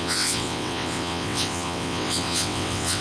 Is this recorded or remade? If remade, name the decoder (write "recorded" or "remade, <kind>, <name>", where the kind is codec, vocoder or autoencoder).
remade, vocoder, WaveNeXt